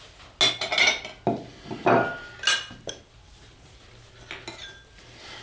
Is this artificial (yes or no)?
no